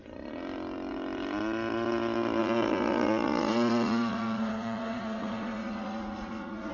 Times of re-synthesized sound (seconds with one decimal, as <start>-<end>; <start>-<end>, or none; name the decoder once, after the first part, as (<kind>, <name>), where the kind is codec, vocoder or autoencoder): 2.4-6.7 (vocoder, Vocos)